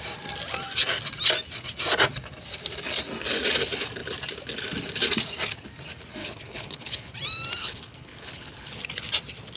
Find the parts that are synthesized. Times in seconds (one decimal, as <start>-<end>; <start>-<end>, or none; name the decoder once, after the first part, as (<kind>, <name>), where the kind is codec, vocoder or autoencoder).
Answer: 6.2-7.1 (codec, HILCodec); 7.6-8.8